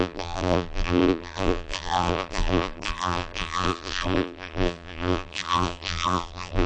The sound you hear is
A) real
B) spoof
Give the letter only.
B